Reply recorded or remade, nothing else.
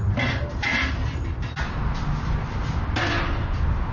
recorded